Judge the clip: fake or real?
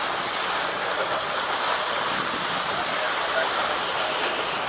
real